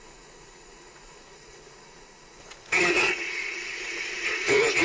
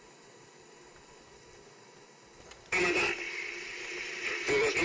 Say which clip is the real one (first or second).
second